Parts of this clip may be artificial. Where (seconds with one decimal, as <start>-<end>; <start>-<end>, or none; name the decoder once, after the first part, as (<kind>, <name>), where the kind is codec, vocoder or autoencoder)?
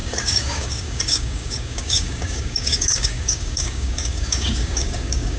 0.0-5.4 (codec, DAC)